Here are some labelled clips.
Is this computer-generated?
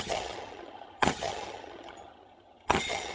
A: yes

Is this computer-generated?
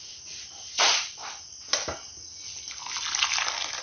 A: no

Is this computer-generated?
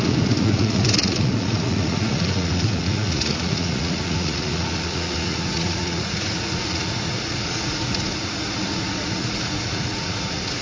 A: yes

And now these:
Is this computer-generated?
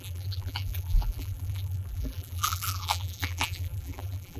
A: yes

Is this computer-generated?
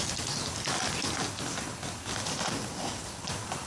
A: no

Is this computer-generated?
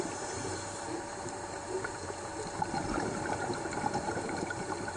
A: yes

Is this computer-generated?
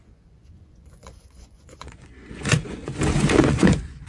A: yes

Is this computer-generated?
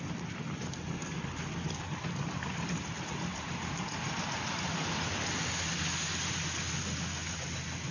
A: no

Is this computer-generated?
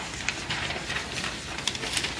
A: no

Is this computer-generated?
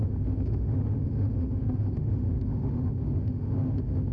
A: yes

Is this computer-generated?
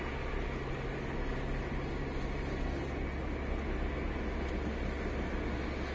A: no